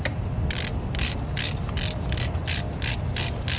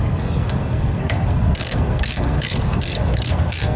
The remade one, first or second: second